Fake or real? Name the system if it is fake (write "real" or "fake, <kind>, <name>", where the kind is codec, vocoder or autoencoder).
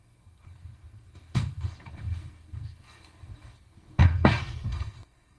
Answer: fake, codec, SNAC